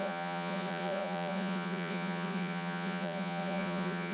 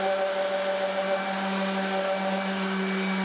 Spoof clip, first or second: first